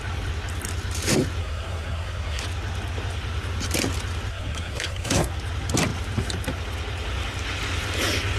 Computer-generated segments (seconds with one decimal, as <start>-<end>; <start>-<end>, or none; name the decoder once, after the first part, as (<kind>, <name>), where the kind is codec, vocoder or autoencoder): 1.4-2.4 (codec, SNAC); 4.3-5.3